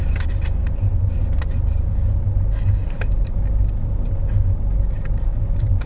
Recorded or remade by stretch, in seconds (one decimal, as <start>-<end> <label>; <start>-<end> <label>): 0.0-0.6 recorded; 0.6-1.2 remade; 1.2-3.6 recorded; 3.6-4.1 remade; 4.1-5.3 recorded; 5.3-5.9 remade